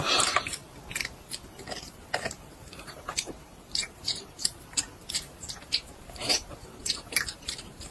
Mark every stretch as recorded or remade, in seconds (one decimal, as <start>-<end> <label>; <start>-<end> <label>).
0.0-0.6 remade; 0.6-2.5 recorded; 2.5-7.9 remade